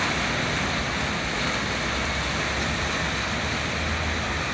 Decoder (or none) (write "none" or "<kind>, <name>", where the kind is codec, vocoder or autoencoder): none